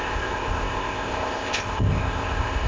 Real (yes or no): no